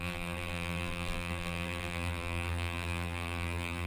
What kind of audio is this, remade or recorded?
remade